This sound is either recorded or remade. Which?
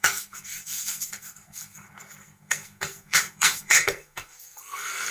remade